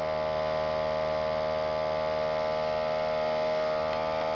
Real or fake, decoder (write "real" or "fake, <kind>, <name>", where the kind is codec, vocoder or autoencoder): real